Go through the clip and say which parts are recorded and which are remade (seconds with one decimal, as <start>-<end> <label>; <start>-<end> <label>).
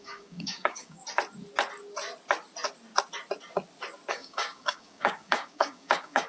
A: 0.0-1.0 remade; 1.0-4.1 recorded; 4.1-6.3 remade